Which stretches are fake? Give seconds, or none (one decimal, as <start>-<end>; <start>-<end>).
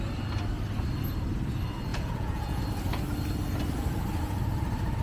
1.9-2.6